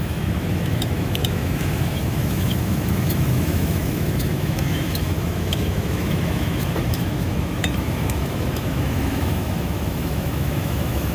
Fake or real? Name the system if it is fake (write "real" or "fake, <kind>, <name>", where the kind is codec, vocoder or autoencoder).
fake, autoencoder, DAC-VAE